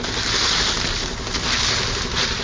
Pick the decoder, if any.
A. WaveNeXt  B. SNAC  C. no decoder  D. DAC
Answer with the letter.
C